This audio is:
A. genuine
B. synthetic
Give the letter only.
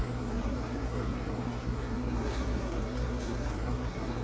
B